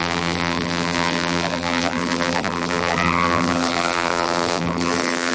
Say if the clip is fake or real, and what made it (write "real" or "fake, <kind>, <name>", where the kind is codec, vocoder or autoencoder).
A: fake, vocoder, BigVGAN v2